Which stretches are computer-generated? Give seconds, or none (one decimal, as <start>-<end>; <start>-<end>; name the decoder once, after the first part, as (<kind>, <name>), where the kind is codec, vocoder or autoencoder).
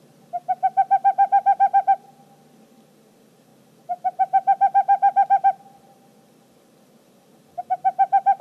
none